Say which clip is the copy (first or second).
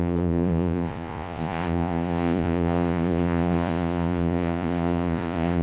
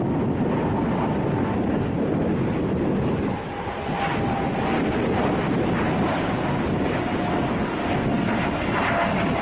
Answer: first